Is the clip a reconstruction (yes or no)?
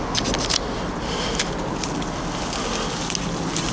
no